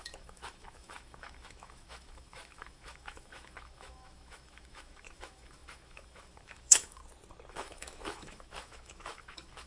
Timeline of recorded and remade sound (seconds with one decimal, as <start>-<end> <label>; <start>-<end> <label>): 0.0-7.0 remade; 7.0-7.5 recorded; 7.5-9.7 remade